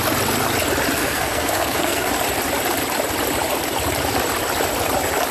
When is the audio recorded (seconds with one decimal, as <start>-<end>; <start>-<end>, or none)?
0.0-1.0; 2.1-5.3